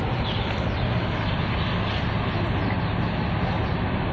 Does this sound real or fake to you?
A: real